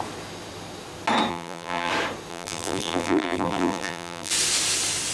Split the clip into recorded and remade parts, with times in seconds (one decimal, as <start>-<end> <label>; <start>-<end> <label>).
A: 0.0-1.3 recorded; 1.3-1.9 remade; 1.9-2.3 recorded; 2.3-4.3 remade; 4.3-5.1 recorded